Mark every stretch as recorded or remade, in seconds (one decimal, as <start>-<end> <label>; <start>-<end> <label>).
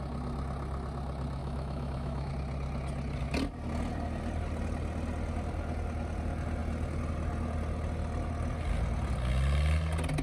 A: 0.0-1.4 recorded; 1.4-2.3 remade; 2.3-10.2 recorded